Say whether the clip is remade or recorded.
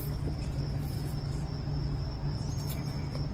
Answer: recorded